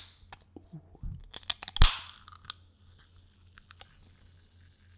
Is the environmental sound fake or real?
real